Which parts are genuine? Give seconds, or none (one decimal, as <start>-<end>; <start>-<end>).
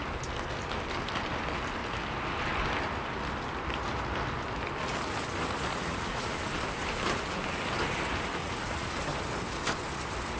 0.0-5.7; 6.4-8.4; 9.0-10.4